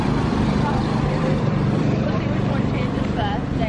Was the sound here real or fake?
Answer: fake